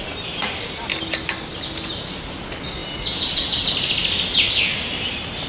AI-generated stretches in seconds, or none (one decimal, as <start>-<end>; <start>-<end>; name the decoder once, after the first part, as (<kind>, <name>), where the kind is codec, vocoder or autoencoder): none